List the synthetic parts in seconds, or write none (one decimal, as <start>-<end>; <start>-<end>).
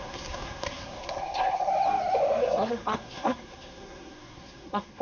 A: 0.0-1.7; 2.4-5.0